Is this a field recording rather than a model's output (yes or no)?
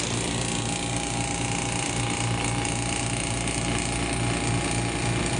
yes